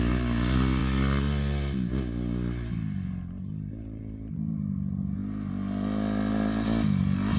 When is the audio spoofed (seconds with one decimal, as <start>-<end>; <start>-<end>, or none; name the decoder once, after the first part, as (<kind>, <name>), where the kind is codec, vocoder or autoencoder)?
none